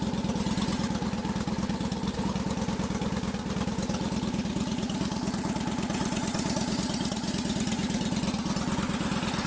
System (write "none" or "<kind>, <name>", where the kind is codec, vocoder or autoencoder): none